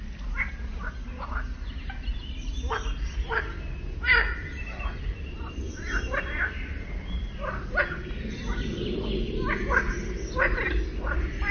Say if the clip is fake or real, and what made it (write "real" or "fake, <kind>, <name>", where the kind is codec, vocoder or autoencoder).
real